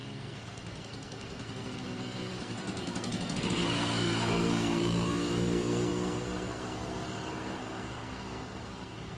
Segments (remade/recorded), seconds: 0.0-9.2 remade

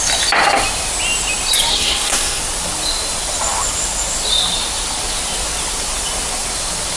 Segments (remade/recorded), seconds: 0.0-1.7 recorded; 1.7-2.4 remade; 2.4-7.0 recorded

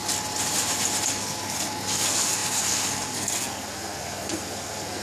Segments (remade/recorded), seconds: 0.0-1.1 recorded; 1.1-5.0 remade

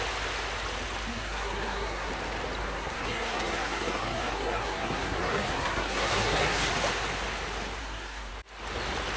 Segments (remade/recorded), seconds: 0.0-1.1 recorded; 1.1-2.1 remade; 2.1-2.6 recorded; 2.6-6.7 remade; 6.7-7.8 recorded; 7.8-8.3 remade; 8.3-9.2 recorded

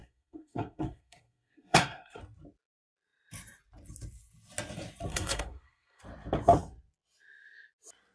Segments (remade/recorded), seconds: 0.0-2.2 remade; 2.2-5.1 recorded; 5.1-6.0 remade; 6.0-8.1 recorded

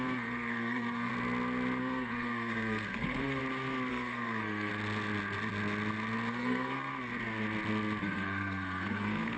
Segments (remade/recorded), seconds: 0.0-1.1 remade; 1.1-1.8 recorded; 1.8-3.4 remade; 3.4-3.9 recorded; 3.9-4.7 remade; 4.7-6.3 recorded; 6.3-6.9 remade; 6.9-8.0 recorded; 8.0-9.4 remade